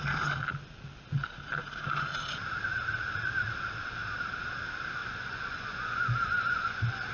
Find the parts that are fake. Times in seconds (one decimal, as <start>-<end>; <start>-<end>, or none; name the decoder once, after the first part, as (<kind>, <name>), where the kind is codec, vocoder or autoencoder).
5.0-7.1 (vocoder, Vocos)

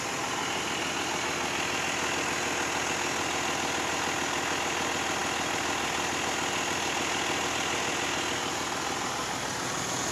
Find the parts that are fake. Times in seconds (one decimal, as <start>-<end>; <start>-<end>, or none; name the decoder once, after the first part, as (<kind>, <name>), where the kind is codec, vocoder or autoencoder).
none